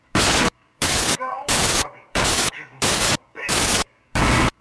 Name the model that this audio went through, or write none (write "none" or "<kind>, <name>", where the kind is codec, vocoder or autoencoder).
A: codec, DAC